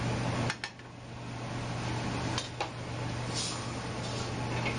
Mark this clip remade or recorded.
recorded